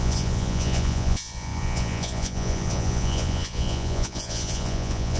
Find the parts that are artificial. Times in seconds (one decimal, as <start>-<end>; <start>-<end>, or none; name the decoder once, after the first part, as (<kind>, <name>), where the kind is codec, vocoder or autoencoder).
0.0-5.2 (vocoder, Vocos)